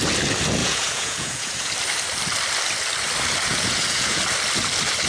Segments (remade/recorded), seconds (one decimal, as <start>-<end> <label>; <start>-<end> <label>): 0.0-0.6 recorded; 0.6-1.7 remade; 1.7-3.5 recorded; 3.5-4.2 remade; 4.2-5.1 recorded